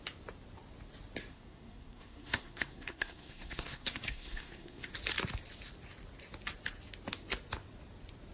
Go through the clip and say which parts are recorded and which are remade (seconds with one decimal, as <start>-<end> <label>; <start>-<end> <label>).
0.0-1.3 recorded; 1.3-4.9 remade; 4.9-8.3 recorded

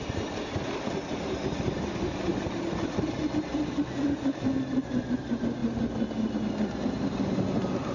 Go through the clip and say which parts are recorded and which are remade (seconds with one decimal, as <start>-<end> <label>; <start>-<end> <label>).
0.0-7.9 recorded

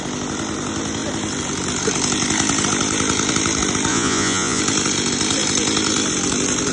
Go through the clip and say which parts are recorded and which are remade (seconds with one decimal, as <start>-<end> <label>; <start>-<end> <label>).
0.0-3.9 recorded; 3.9-4.6 remade; 4.6-6.7 recorded

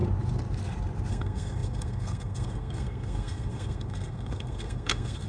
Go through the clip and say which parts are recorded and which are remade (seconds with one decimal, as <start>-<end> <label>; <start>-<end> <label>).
0.0-1.1 recorded; 1.1-5.3 remade

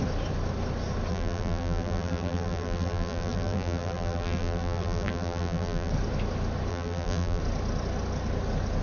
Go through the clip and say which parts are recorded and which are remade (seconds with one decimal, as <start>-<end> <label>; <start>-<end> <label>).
0.0-1.1 recorded; 1.1-5.9 remade; 5.9-6.7 recorded; 6.7-7.4 remade; 7.4-8.8 recorded

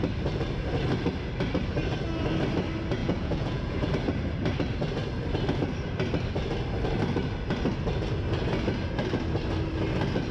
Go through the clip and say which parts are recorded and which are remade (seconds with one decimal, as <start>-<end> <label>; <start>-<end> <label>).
0.0-3.0 recorded; 3.0-3.9 remade; 3.9-10.3 recorded

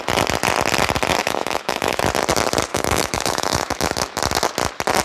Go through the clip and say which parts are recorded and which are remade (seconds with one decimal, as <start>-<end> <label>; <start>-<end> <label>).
0.0-1.2 recorded; 1.2-2.0 remade; 2.0-2.7 recorded; 2.7-4.2 remade; 4.2-5.0 recorded

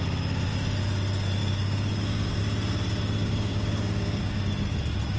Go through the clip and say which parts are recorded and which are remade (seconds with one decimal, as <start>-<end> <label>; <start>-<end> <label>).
0.0-1.4 recorded; 1.4-2.4 remade; 2.4-3.2 recorded; 3.2-4.4 remade; 4.4-5.2 recorded